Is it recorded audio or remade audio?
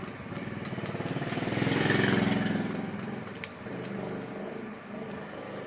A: recorded